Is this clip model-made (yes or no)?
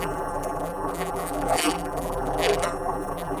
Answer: yes